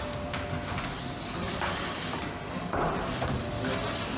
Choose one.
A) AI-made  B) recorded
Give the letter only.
B